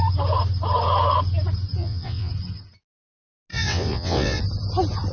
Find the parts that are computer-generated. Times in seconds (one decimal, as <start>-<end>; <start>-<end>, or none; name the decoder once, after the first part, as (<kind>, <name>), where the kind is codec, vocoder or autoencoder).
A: 1.8-2.3 (vocoder, WaveNeXt); 3.5-4.4